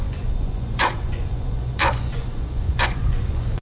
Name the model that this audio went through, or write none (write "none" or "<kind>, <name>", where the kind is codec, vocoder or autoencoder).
vocoder, Vocos